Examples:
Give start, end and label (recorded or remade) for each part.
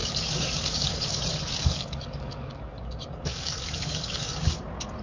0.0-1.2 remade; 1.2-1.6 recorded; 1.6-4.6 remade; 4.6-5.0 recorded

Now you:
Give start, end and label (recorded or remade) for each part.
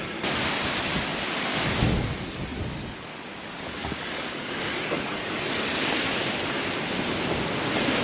0.0-2.5 recorded; 2.5-3.2 remade; 3.2-3.8 recorded; 3.8-5.5 remade; 5.5-8.0 recorded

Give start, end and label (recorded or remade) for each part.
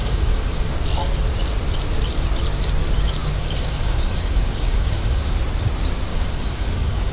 0.0-0.7 remade; 0.7-3.2 recorded; 3.2-5.3 remade; 5.3-6.1 recorded; 6.1-7.1 remade